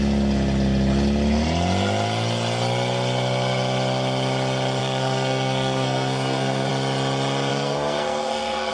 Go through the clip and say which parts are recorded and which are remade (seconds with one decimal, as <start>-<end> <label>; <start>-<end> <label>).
0.0-4.8 recorded; 4.8-6.7 remade; 6.7-7.5 recorded; 7.5-8.7 remade